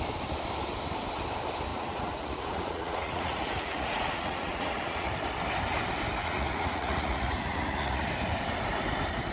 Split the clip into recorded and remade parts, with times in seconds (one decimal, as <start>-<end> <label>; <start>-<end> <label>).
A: 0.0-1.7 recorded; 1.7-5.1 remade; 5.1-6.2 recorded; 6.2-8.1 remade; 8.1-9.3 recorded